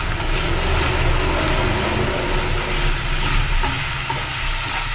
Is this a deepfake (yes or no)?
no